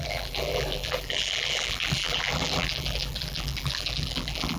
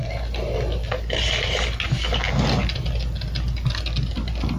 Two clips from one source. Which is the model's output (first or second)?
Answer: first